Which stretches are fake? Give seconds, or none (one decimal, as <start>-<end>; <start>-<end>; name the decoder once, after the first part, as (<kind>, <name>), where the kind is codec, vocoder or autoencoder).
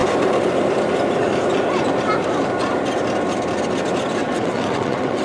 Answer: 4.2-5.2 (vocoder, WaveNeXt)